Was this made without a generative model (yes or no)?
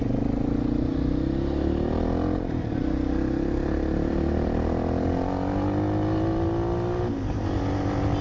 yes